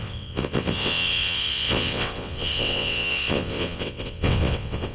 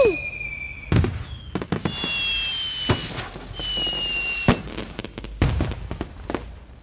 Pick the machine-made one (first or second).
first